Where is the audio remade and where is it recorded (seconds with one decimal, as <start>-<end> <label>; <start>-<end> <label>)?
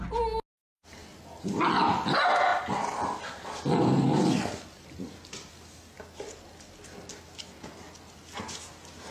0.0-2.5 recorded; 2.5-5.5 remade; 5.5-9.1 recorded